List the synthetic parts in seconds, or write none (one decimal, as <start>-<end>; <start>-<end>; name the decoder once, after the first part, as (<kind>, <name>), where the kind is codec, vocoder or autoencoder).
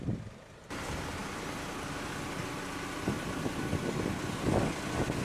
none